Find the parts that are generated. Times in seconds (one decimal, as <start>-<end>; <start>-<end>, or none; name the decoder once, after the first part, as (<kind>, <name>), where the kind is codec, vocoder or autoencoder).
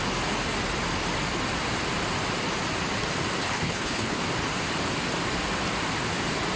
3.4-4.2 (codec, HILCodec)